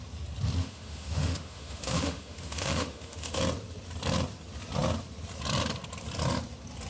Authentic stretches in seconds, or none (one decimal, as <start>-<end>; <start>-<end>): 0.0-0.6; 3.4-6.9